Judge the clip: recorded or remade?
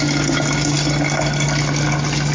recorded